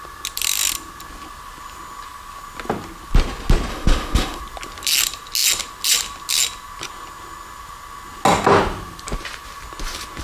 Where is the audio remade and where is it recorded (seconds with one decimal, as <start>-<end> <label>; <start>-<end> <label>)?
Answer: 0.0-3.7 recorded; 3.7-4.4 remade; 4.4-10.2 recorded